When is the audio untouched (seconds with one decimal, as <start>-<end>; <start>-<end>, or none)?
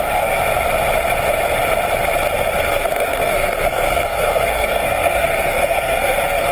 0.4-2.6